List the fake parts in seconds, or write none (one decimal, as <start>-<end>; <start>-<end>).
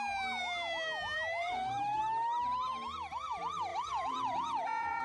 1.4-2.0; 3.7-5.0